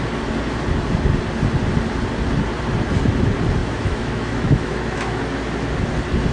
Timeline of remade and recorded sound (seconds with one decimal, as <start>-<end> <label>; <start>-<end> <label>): 0.0-3.6 recorded; 3.6-5.2 remade; 5.2-6.3 recorded